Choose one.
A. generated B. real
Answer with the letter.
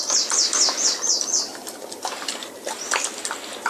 B